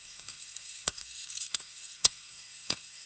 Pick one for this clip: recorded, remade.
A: remade